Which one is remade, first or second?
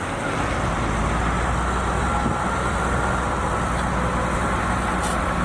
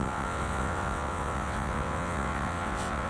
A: second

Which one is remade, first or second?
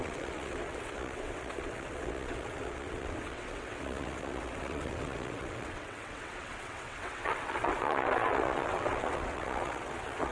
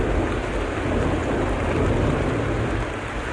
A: first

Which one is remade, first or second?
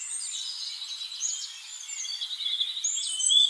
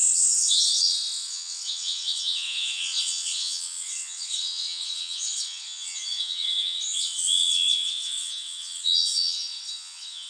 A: second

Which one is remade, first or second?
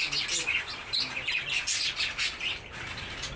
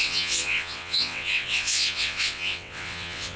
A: second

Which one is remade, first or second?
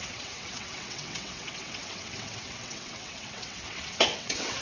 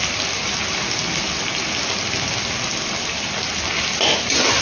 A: first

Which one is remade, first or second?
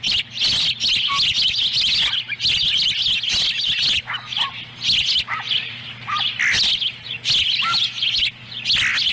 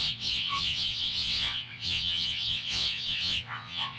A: second